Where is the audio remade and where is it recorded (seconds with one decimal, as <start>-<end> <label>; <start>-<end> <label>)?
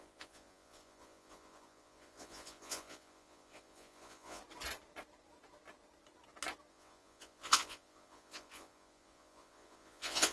0.0-4.4 remade; 4.4-6.7 recorded; 6.7-10.3 remade